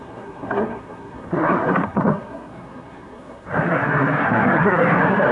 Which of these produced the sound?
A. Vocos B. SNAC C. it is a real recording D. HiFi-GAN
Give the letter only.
B